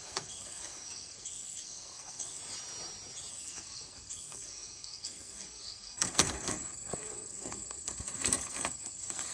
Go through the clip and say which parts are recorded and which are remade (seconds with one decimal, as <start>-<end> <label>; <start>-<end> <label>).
0.0-2.4 remade; 2.4-3.3 recorded; 3.3-9.3 remade

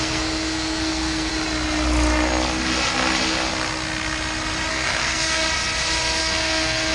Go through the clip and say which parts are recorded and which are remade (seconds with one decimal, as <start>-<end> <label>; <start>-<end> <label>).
0.0-1.3 remade; 1.3-4.7 recorded; 4.7-5.4 remade; 5.4-6.2 recorded; 6.2-6.9 remade